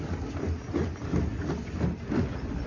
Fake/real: real